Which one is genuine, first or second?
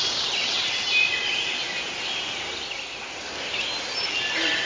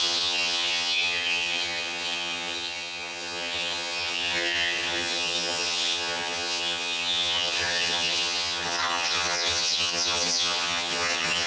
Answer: first